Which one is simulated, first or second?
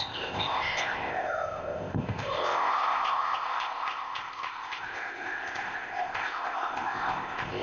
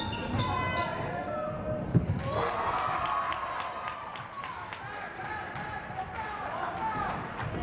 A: first